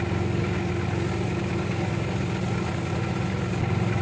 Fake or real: real